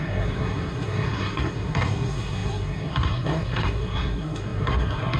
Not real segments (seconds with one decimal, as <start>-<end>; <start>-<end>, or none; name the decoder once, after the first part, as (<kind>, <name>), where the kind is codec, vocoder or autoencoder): 0.0-5.2 (codec, SNAC)